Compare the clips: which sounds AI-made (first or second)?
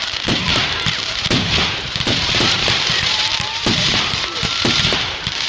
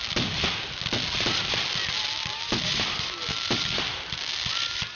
first